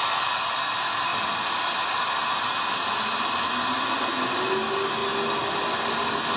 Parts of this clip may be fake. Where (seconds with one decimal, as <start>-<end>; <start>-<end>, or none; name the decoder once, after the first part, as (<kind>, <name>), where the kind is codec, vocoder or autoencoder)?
none